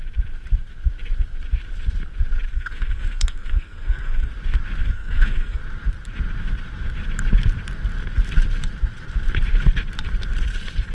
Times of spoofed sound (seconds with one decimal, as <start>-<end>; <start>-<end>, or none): 2.5-4.3; 4.8-5.6